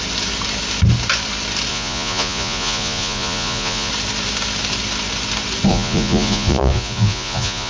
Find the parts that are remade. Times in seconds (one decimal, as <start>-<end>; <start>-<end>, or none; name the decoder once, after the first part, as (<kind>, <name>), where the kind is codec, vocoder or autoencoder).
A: 1.7-3.9 (vocoder, Vocos); 5.7-7.7